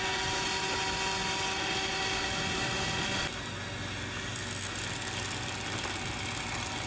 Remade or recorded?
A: recorded